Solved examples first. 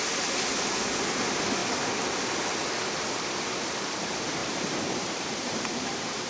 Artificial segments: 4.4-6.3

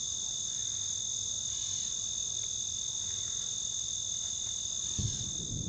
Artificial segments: 0.0-0.6; 1.3-2.2; 2.9-5.7

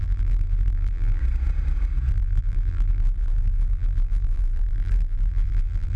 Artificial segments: 0.0-1.2; 2.1-6.0

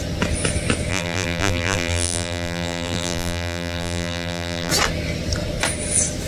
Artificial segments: 0.9-4.7

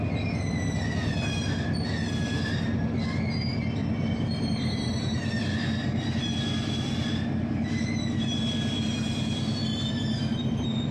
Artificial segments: 3.8-5.5

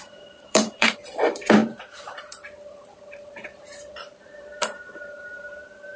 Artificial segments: 0.0-6.0